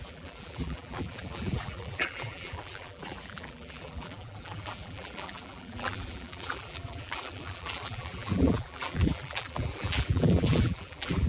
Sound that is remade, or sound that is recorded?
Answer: remade